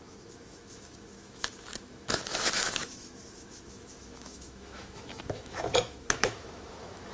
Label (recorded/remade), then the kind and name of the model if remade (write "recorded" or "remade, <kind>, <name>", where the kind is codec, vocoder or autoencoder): remade, autoencoder, DAC-VAE